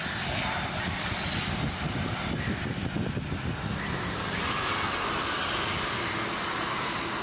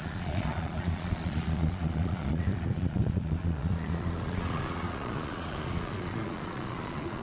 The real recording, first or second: first